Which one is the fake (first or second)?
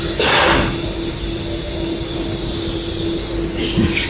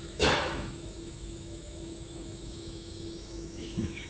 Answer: second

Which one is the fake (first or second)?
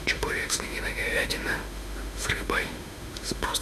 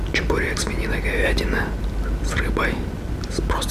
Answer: first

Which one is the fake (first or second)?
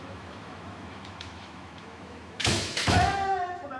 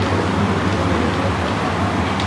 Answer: first